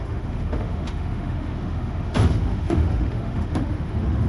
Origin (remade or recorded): remade